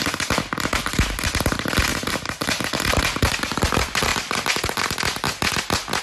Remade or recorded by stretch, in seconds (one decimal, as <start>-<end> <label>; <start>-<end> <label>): 0.0-6.0 remade